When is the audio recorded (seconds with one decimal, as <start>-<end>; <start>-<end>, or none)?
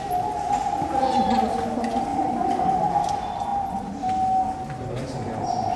0.0-0.6; 1.4-2.1; 2.8-5.8